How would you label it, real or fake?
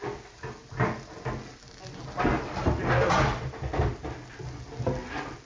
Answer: real